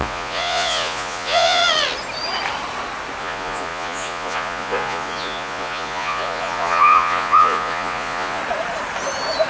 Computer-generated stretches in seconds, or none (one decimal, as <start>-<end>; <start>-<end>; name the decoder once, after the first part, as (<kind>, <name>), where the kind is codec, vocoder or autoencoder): 0.0-1.6 (vocoder, Vocos); 3.2-8.4